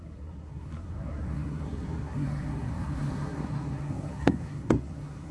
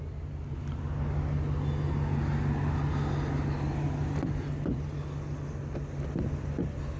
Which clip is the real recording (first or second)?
second